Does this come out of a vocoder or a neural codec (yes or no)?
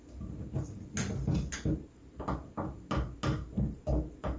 no